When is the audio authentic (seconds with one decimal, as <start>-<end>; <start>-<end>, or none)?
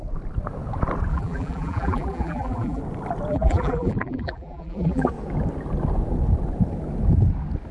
0.0-1.1; 2.8-3.3; 5.1-7.7